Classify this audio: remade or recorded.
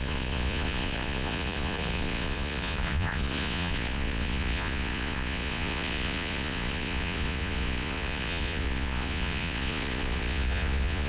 remade